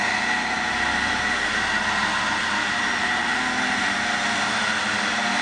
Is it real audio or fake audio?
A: real